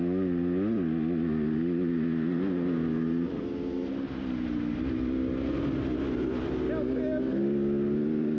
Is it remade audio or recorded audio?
recorded